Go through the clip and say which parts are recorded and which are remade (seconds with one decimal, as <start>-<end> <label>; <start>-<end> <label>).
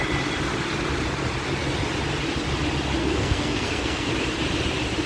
0.0-3.0 recorded; 3.0-4.1 remade; 4.1-5.1 recorded